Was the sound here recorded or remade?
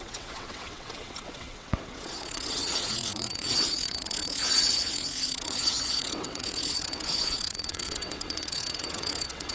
remade